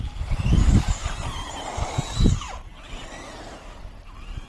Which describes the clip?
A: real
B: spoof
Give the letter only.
A